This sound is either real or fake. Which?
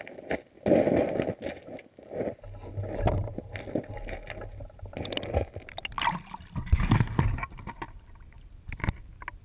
real